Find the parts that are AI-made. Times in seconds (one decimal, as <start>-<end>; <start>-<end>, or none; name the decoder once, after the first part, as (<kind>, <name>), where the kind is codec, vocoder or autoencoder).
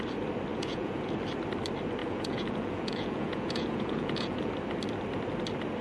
0.5-1.1 (vocoder, Vocos); 2.0-4.5